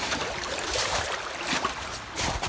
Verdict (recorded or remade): remade